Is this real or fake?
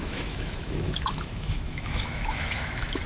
fake